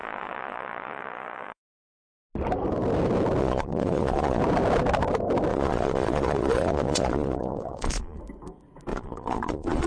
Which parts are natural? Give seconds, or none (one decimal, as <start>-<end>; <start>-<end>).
1.6-3.4; 4.4-5.5; 8.2-8.9